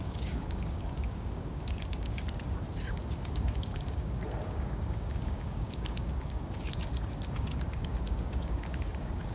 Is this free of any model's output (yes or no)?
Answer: no